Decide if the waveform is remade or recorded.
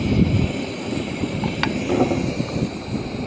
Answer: recorded